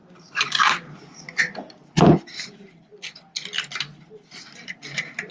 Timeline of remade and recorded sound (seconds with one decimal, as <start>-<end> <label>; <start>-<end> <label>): 0.0-2.0 recorded; 2.0-2.9 remade; 2.9-4.5 recorded; 4.5-5.3 remade